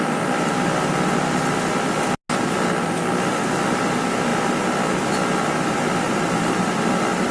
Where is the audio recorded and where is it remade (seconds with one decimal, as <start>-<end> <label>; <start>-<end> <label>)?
0.0-7.3 recorded